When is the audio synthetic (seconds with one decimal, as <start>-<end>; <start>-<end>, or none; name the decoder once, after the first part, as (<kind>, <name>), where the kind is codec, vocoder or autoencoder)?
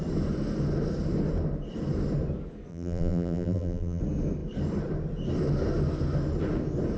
2.7-4.0 (vocoder, BigVGAN v2)